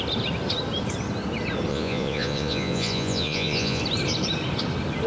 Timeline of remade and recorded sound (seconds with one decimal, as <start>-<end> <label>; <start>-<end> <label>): 0.0-1.7 recorded; 1.7-3.8 remade; 3.8-5.1 recorded